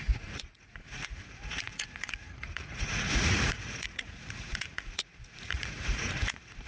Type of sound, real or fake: fake